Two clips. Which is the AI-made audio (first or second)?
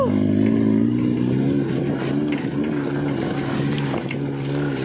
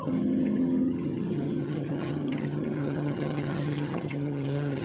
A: second